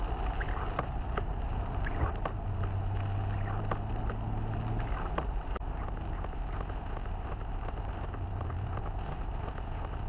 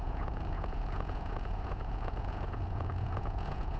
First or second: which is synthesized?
second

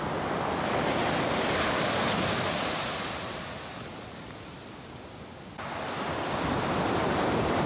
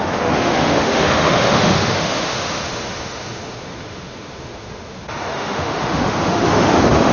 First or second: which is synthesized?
second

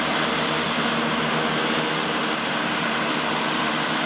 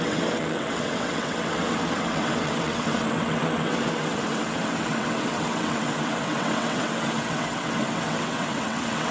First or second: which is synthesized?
second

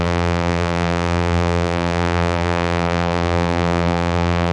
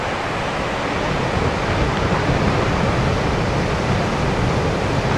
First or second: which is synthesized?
first